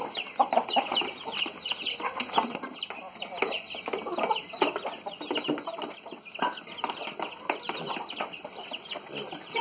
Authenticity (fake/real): real